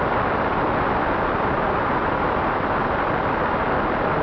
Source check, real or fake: real